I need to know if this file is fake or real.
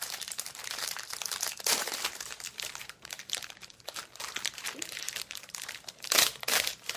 fake